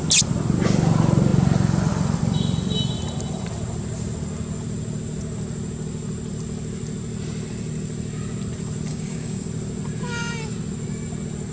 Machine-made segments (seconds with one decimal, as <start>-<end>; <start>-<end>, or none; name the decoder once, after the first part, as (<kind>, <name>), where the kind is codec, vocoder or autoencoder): 8.9-9.5 (codec, DAC)

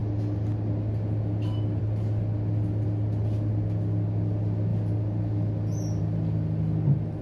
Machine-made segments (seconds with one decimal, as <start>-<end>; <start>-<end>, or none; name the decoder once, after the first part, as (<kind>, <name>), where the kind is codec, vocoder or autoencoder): none

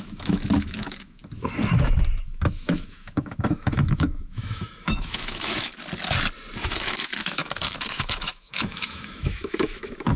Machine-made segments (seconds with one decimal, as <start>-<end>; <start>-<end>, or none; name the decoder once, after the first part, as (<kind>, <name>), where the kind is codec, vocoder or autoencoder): 0.0-1.2 (autoencoder, DAC-VAE); 2.2-5.7; 6.6-10.2

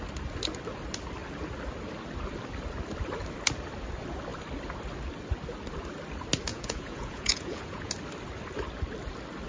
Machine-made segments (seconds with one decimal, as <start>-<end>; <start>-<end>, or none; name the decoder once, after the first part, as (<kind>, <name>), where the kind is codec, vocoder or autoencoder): 6.5-7.9 (vocoder, Vocos)

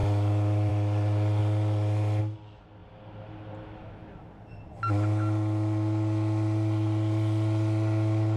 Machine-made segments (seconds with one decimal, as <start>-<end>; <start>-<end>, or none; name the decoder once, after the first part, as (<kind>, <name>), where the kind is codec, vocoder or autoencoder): none

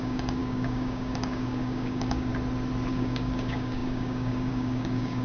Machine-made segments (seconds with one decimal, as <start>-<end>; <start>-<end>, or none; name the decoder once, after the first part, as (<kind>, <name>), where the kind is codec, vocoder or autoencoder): 0.0-2.3 (codec, DAC); 2.9-5.2

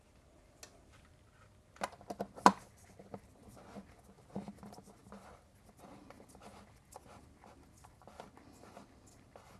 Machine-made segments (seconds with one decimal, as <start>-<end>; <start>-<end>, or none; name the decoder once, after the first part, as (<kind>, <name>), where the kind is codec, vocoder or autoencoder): none

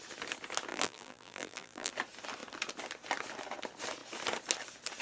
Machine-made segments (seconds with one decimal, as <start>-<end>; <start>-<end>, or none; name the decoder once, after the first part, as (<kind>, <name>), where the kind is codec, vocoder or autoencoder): 0.7-1.9 (vocoder, BigVGAN v2)